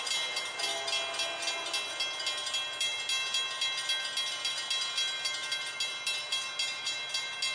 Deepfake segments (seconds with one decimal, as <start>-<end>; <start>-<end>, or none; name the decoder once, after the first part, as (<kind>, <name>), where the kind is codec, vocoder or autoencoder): none